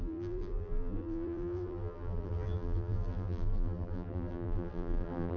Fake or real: fake